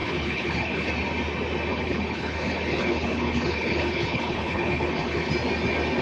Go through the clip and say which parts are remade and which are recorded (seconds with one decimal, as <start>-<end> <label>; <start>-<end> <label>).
0.0-0.9 remade; 0.9-1.7 recorded; 1.7-5.3 remade; 5.3-6.0 recorded